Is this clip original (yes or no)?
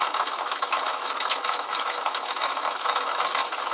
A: no